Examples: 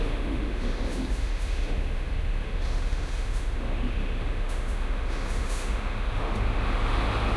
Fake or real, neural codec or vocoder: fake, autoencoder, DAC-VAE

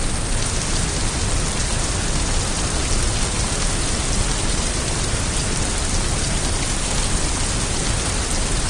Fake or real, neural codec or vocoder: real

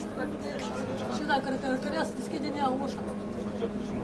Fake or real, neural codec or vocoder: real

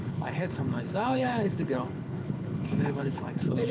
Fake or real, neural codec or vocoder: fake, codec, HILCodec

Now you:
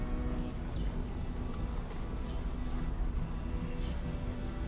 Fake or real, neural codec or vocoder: real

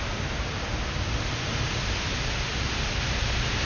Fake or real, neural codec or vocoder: real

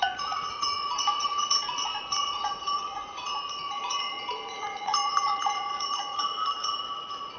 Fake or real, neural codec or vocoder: fake, vocoder, Vocos